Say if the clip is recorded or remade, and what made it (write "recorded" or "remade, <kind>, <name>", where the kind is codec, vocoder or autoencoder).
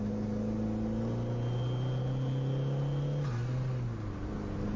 recorded